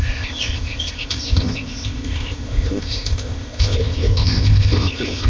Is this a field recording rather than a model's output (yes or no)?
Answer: no